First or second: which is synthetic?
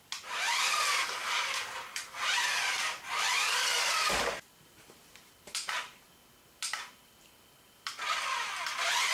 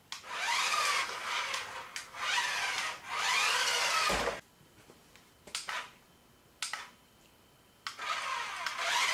first